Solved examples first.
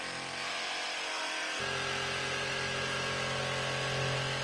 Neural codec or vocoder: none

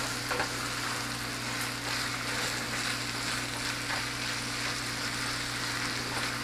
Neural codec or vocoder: none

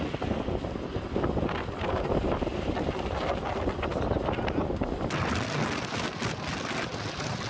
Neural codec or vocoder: none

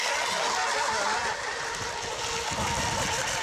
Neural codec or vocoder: none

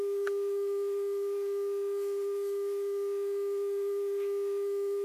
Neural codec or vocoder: autoencoder, DAC-VAE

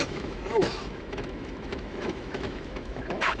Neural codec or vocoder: autoencoder, DAC-VAE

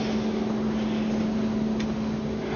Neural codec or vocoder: none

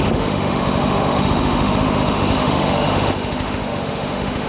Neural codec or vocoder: autoencoder, DAC-VAE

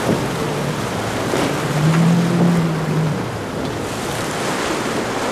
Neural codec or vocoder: none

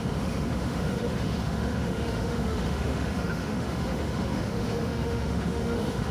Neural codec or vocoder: autoencoder, DAC-VAE